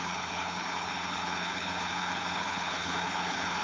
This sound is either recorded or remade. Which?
remade